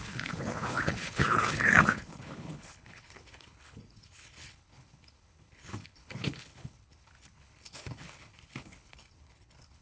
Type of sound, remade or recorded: remade